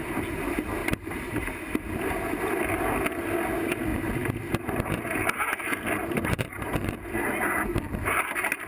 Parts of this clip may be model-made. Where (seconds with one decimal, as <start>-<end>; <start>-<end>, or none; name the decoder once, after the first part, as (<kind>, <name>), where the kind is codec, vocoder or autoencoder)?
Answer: 0.8-1.8 (vocoder, BigVGAN v2); 3.9-6.9